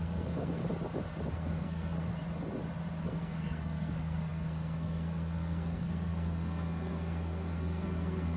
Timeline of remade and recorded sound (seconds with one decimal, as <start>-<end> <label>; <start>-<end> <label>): 0.0-0.6 remade; 0.6-1.3 recorded; 1.3-2.1 remade; 2.1-3.0 recorded; 3.0-8.4 remade